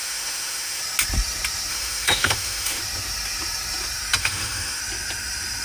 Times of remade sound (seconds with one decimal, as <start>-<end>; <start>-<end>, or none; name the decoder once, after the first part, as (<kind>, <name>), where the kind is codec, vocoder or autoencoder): 0.0-0.8 (autoencoder, DAC-VAE); 1.7-2.8; 4.2-4.8